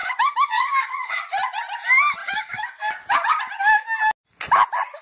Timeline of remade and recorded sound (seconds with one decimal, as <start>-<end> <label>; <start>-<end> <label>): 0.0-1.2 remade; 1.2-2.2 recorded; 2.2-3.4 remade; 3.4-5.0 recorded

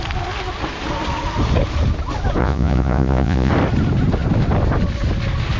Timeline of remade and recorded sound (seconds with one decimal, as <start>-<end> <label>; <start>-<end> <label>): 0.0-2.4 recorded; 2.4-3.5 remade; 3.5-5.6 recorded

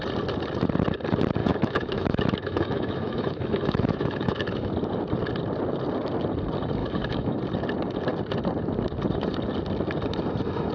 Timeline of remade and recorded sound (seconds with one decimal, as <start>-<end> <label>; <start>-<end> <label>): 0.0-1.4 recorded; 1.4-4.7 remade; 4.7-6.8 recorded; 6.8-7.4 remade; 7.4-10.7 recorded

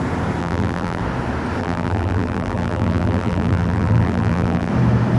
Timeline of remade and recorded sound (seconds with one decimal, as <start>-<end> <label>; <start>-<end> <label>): 0.0-0.4 recorded; 0.4-1.0 remade; 1.0-1.6 recorded; 1.6-4.7 remade; 4.7-5.2 recorded

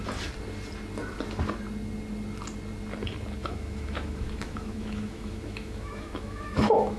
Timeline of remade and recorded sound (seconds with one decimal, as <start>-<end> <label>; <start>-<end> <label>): 0.0-3.4 recorded; 3.4-7.0 remade

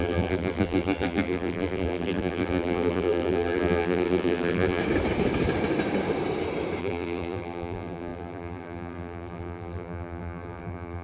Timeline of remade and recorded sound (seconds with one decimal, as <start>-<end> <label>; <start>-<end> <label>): 0.0-4.8 remade; 4.8-6.8 recorded; 6.8-11.0 remade

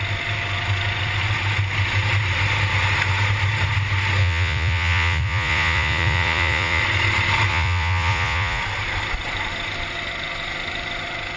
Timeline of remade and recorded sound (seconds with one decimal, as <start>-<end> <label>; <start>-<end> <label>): 0.0-4.2 recorded; 4.2-6.8 remade; 6.8-7.5 recorded; 7.5-8.6 remade; 8.6-11.4 recorded